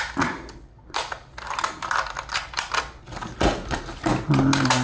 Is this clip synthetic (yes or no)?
no